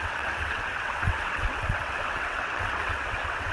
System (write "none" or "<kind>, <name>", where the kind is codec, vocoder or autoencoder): vocoder, WaveNeXt